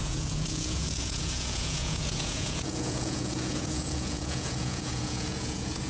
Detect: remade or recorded remade